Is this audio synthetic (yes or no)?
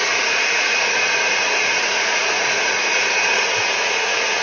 yes